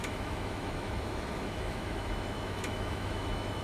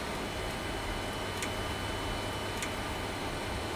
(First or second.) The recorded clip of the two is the second